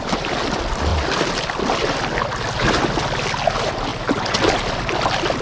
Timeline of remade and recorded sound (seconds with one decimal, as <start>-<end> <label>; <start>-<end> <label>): 0.0-5.4 recorded